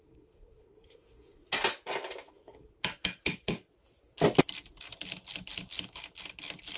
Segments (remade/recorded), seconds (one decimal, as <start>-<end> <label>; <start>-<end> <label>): 0.0-1.4 remade; 1.4-2.3 recorded; 2.3-2.7 remade; 2.7-6.8 recorded